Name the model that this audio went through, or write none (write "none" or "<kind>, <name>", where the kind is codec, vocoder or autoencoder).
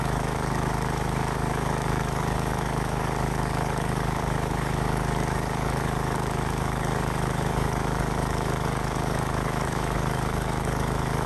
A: codec, DAC